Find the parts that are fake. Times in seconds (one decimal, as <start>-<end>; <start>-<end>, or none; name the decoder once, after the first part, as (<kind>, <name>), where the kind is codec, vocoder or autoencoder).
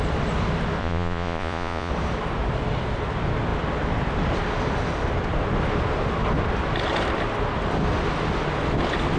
0.8-1.9 (vocoder, Vocos)